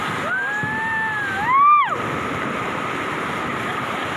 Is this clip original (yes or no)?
yes